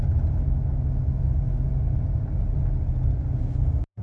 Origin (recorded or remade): recorded